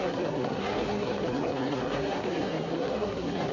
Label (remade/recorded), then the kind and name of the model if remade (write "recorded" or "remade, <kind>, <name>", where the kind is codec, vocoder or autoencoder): remade, codec, SNAC